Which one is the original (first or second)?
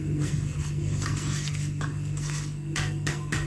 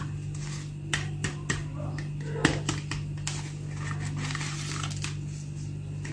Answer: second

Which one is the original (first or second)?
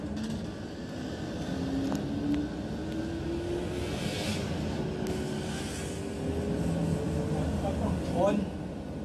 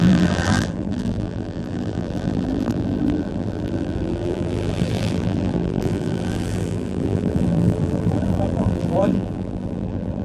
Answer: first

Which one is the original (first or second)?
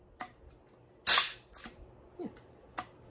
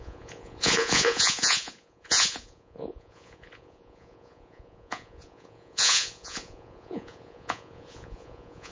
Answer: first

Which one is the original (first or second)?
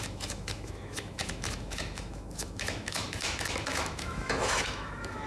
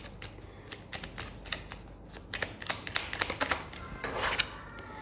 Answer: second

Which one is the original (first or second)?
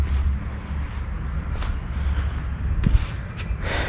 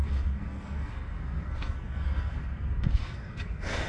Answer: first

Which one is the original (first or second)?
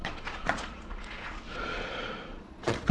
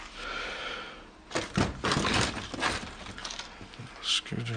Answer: second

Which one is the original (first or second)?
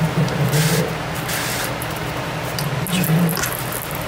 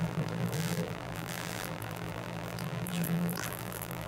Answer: first